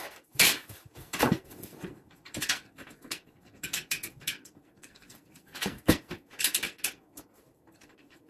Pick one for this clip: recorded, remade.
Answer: remade